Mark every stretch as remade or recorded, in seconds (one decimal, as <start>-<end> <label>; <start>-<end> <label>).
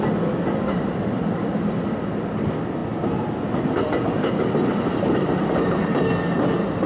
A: 0.0-6.9 recorded